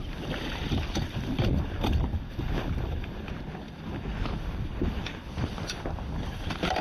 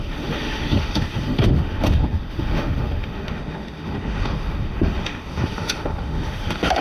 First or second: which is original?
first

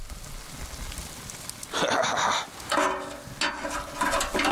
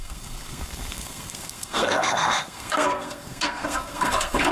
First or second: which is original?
first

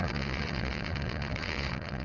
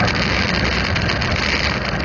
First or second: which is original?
second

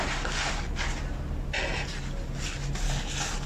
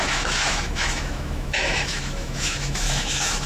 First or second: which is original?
first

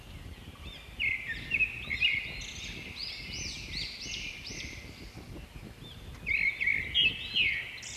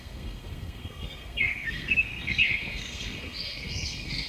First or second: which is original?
first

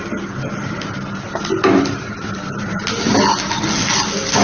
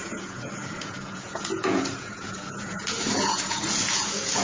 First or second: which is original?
first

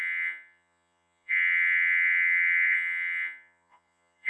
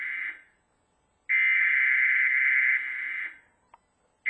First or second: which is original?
second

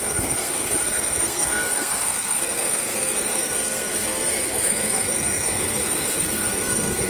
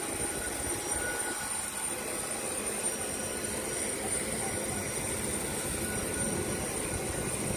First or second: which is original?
second